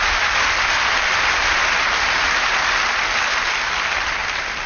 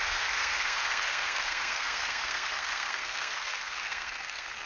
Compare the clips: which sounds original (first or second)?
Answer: first